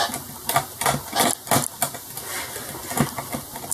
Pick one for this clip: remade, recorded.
recorded